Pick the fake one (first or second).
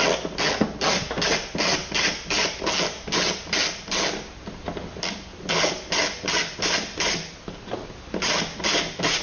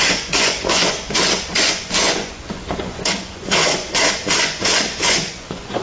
second